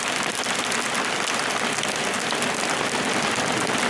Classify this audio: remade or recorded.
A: recorded